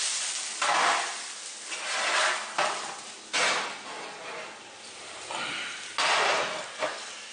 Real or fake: real